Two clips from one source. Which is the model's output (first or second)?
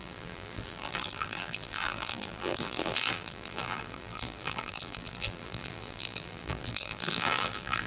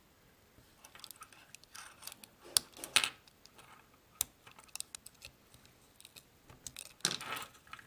first